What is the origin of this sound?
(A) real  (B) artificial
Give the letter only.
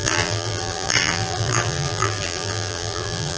B